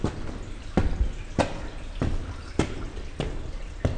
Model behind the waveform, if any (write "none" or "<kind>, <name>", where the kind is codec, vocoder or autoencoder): none